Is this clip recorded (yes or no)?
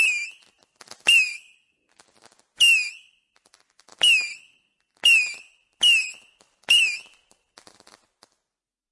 yes